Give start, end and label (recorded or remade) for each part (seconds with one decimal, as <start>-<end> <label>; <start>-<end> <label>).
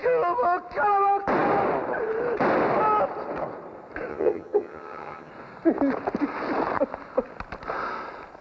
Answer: 0.0-4.1 recorded; 4.1-5.3 remade; 5.3-8.4 recorded